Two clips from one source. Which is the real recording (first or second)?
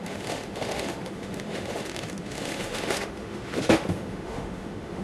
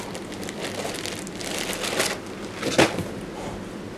second